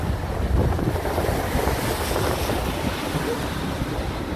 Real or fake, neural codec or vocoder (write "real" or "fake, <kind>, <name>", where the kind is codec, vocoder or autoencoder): real